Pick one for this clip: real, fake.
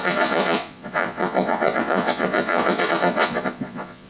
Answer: fake